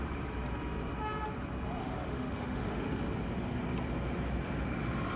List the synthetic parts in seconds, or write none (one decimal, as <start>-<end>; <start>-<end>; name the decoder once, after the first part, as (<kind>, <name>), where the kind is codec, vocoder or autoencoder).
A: 1.8-3.0 (autoencoder, DAC-VAE)